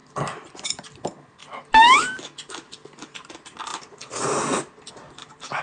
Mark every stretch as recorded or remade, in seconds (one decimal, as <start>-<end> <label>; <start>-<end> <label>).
0.0-0.5 remade; 0.5-1.4 recorded; 1.4-2.0 remade; 2.0-5.6 recorded